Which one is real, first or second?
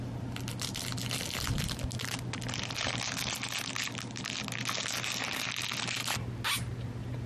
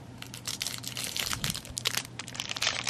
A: first